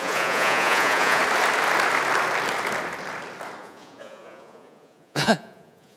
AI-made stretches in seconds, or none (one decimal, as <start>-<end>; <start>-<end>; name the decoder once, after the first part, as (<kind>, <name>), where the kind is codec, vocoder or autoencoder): 0.0-1.2 (vocoder, Vocos); 3.6-6.0